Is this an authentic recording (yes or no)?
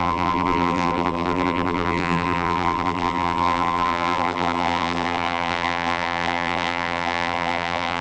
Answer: no